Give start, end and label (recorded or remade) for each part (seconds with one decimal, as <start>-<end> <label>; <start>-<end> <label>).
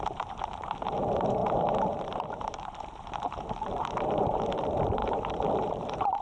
0.0-6.2 remade